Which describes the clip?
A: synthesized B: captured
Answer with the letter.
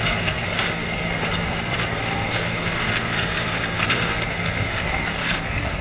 A